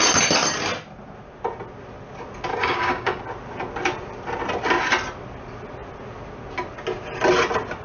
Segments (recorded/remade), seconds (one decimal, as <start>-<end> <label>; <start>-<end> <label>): 0.0-2.5 recorded; 2.5-3.2 remade; 3.2-7.8 recorded